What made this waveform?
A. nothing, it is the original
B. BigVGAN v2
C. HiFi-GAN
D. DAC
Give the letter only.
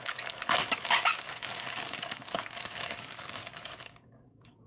D